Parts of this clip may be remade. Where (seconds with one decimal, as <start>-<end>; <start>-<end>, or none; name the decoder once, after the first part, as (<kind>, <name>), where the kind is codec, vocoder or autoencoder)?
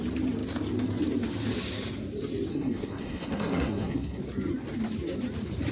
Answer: 2.5-4.2 (codec, SNAC)